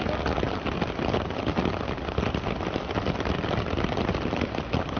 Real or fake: real